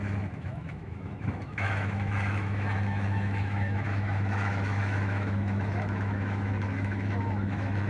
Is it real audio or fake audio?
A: fake